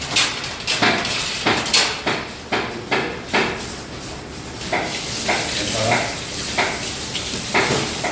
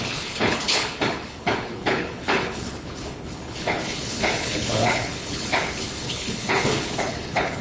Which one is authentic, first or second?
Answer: first